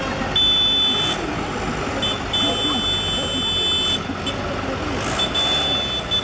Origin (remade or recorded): recorded